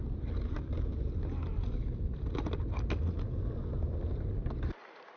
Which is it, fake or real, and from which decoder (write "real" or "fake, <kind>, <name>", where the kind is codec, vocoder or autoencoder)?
real